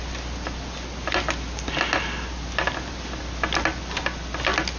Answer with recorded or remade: recorded